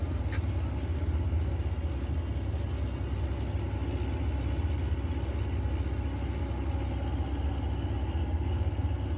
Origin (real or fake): real